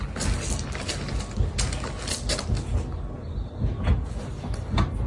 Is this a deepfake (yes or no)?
no